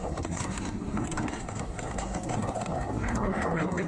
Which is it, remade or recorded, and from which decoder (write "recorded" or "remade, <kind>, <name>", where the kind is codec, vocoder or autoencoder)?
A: remade, codec, SNAC